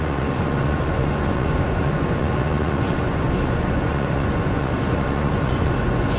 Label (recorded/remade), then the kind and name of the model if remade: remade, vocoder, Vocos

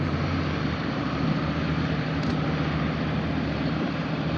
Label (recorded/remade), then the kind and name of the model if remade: remade, vocoder, BigVGAN v2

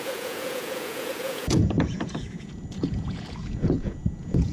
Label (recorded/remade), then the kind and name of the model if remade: remade, vocoder, Vocos